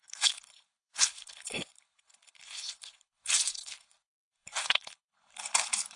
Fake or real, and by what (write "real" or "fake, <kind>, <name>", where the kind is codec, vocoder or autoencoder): fake, codec, HILCodec